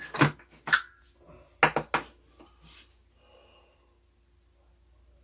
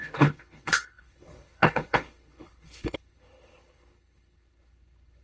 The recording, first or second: first